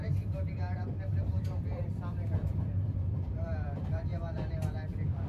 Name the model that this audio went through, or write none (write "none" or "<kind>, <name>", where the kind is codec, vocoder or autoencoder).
vocoder, BigVGAN v2